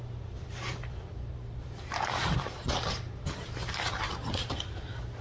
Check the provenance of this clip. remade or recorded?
remade